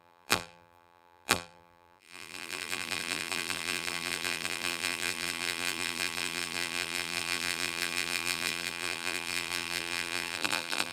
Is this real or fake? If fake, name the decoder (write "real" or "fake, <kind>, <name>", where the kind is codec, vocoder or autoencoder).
fake, vocoder, BigVGAN v2